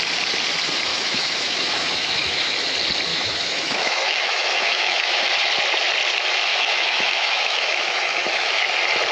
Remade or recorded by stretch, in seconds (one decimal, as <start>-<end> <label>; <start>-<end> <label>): 0.0-0.9 recorded; 0.9-2.5 remade; 2.5-3.1 recorded; 3.1-5.3 remade; 5.3-6.5 recorded; 6.5-8.6 remade; 8.6-9.1 recorded